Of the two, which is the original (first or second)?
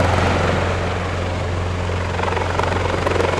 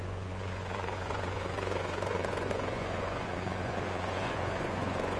first